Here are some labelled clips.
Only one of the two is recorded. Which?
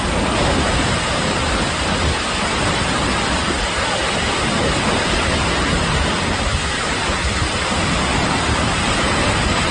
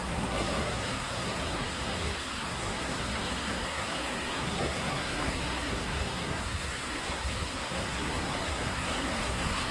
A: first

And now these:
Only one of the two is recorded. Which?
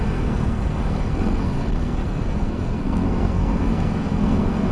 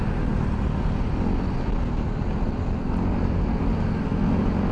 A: second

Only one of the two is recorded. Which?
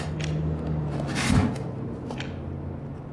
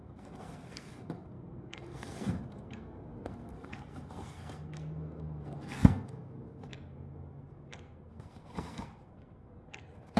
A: first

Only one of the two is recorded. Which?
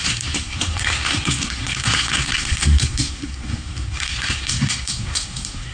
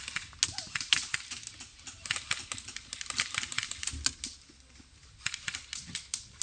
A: second